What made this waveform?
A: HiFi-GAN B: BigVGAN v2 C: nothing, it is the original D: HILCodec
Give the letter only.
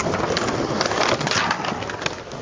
C